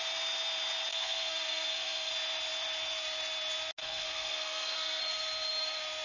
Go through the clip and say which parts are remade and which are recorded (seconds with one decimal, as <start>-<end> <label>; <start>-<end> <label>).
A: 0.0-0.9 recorded; 0.9-2.1 remade; 2.1-3.8 recorded; 3.8-5.0 remade; 5.0-6.0 recorded